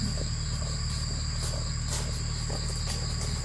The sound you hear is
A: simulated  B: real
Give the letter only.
B